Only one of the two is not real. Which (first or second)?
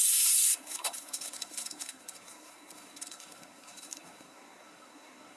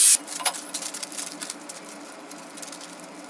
first